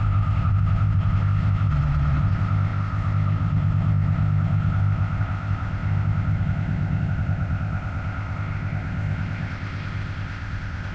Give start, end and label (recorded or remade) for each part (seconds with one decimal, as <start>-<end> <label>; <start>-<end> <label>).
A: 0.0-1.7 remade; 1.7-2.2 recorded; 2.2-10.9 remade